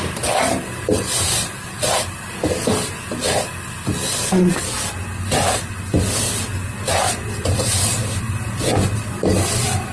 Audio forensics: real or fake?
real